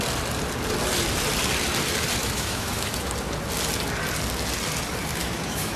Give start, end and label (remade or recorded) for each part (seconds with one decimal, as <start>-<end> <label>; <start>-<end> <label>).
0.0-2.2 recorded; 2.2-3.1 remade; 3.1-5.1 recorded; 5.1-5.8 remade